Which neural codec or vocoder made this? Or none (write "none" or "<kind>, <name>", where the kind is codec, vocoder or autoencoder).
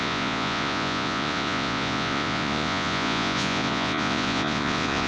vocoder, Vocos